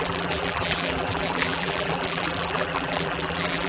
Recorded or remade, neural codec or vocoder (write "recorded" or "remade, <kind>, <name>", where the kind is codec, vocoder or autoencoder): remade, vocoder, BigVGAN v2